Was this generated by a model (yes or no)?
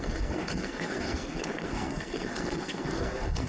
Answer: yes